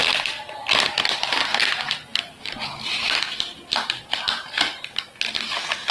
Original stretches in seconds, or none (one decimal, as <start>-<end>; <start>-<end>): 0.0-5.9